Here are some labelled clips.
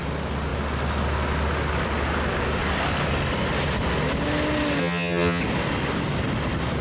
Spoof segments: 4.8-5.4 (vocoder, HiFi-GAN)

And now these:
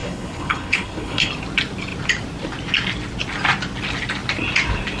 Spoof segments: 0.0-1.3 (codec, HILCodec)

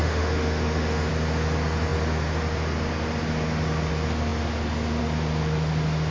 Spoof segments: 0.0-1.1 (autoencoder, DAC-VAE)